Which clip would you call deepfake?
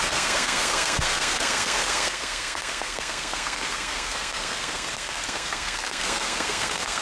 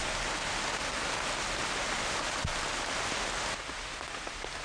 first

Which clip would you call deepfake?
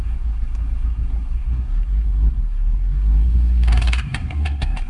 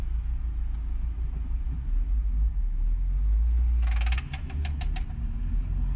first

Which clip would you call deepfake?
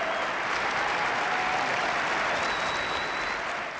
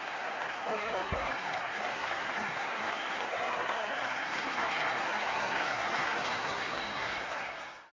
second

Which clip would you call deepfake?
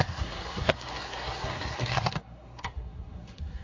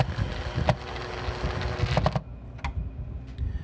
first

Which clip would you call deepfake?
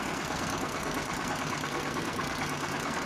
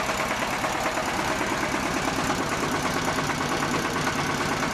first